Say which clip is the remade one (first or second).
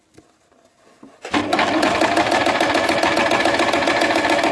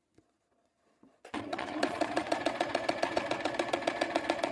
second